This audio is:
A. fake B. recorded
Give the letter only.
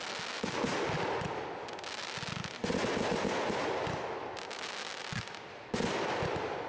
B